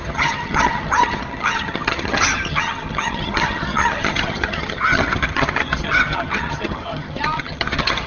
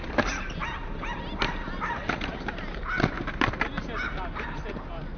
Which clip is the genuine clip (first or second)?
second